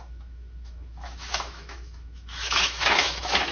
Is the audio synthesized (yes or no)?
yes